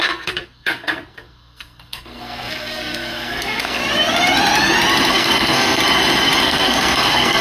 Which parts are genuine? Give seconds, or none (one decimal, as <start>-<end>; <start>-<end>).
3.8-5.1; 5.8-6.4